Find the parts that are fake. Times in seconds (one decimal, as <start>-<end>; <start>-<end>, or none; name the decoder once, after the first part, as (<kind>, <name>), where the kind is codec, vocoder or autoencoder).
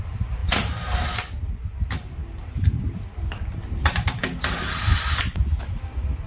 none